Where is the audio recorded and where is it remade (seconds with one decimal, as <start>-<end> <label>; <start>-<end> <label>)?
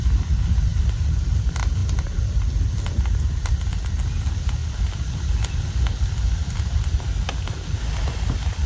0.0-8.7 recorded